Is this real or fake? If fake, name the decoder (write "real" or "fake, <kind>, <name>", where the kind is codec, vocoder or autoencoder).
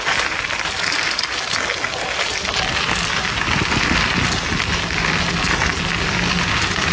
real